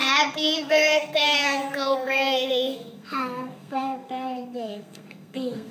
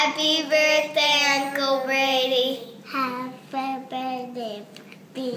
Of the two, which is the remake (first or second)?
first